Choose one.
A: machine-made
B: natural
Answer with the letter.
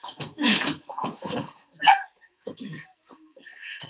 A